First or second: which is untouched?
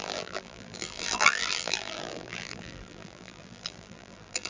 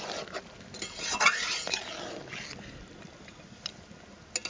second